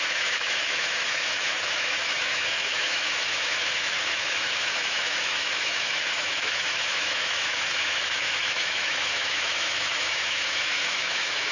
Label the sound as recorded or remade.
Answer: remade